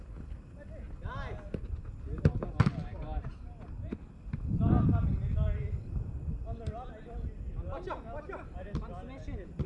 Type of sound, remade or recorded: recorded